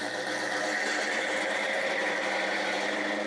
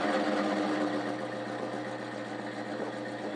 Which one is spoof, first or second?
first